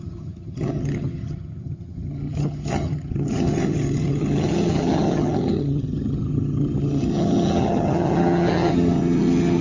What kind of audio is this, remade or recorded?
remade